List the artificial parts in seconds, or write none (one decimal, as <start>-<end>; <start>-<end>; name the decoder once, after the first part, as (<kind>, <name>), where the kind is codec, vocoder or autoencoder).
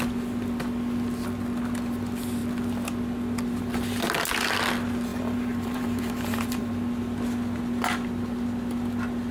5.1-6.7 (vocoder, BigVGAN v2)